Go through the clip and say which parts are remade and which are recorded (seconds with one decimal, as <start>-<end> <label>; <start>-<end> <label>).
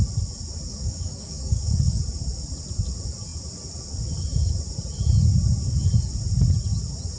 0.0-0.7 recorded; 0.7-2.0 remade; 2.0-7.2 recorded